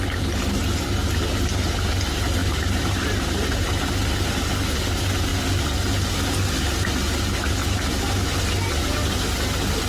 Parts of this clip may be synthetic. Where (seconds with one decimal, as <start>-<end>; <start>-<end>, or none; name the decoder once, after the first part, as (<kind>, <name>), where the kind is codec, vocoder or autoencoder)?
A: 2.4-3.6 (vocoder, BigVGAN v2); 7.6-8.4